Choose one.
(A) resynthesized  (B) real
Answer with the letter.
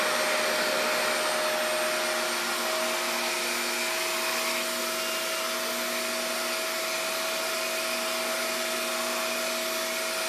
B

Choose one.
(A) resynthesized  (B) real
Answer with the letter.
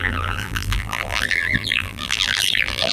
A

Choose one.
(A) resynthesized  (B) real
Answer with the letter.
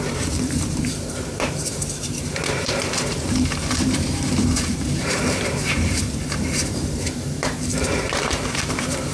A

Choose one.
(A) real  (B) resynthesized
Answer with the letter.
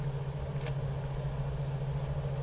A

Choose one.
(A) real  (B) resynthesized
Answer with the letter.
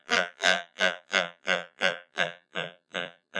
B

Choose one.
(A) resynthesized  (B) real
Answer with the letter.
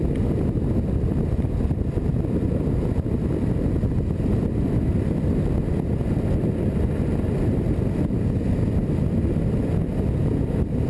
B